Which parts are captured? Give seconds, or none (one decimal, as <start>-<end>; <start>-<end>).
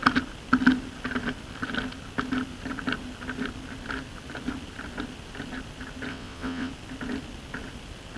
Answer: 0.0-6.1; 6.7-8.2